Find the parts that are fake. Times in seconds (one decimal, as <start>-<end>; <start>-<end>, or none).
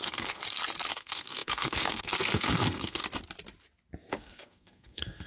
0.0-0.4; 0.9-3.0; 4.1-5.3